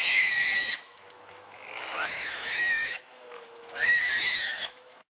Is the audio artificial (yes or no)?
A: yes